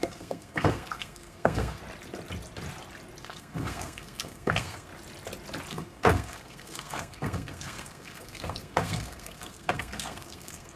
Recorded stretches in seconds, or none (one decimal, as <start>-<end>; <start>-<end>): 1.8-3.2; 4.9-5.7